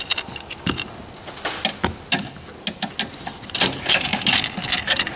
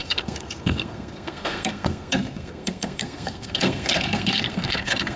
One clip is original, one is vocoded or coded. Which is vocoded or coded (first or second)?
second